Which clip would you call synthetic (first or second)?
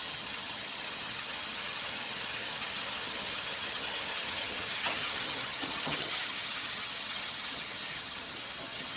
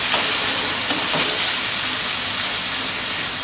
first